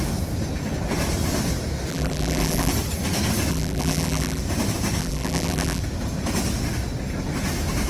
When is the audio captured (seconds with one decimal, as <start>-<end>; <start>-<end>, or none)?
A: 0.0-1.9; 2.7-3.5; 4.4-5.0; 5.8-7.9